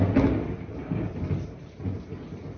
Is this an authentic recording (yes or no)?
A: yes